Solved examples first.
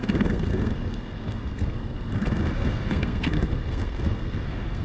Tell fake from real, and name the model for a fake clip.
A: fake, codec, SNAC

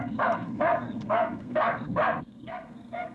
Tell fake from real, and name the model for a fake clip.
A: fake, codec, SNAC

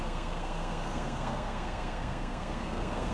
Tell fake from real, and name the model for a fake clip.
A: fake, codec, SNAC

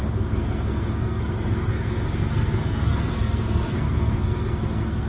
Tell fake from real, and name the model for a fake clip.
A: fake, codec, SNAC